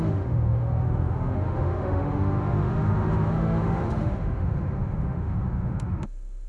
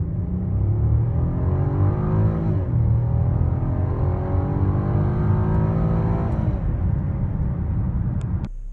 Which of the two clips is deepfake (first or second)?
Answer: first